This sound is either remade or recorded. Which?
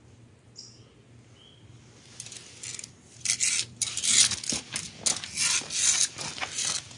recorded